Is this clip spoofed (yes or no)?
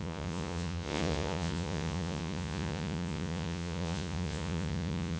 yes